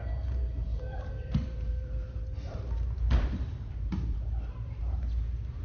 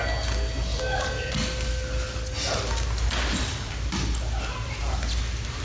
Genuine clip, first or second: second